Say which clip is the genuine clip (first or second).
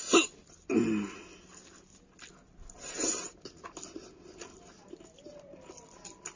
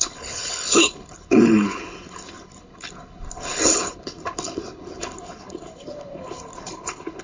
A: first